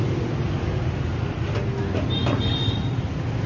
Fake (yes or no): no